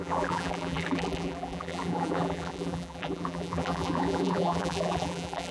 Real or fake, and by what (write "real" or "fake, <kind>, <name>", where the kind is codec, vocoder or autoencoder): fake, vocoder, BigVGAN v2